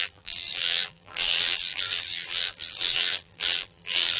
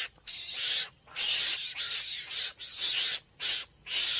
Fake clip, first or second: first